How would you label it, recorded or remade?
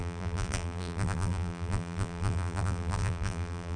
remade